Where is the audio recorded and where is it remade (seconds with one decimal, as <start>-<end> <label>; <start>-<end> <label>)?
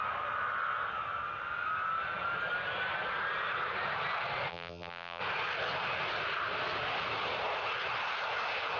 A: 0.0-4.5 recorded; 4.5-5.2 remade; 5.2-8.8 recorded